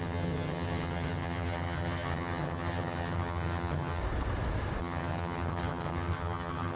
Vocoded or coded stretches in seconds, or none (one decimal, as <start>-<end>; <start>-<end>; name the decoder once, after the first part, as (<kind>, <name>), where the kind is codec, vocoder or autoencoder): 0.0-4.0 (vocoder, HiFi-GAN); 4.8-6.8